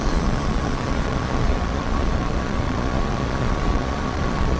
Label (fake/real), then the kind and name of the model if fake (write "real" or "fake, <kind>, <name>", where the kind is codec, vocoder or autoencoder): fake, vocoder, Vocos